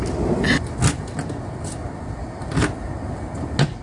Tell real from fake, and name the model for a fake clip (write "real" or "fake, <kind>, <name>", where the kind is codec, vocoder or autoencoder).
real